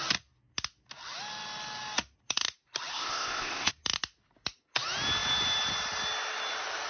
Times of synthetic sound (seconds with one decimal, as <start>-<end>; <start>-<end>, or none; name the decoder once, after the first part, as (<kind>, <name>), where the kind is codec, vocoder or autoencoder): 2.9-3.7 (codec, ZipCodec)